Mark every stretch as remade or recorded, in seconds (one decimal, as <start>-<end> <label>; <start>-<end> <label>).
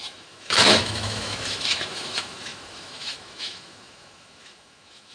0.0-5.1 remade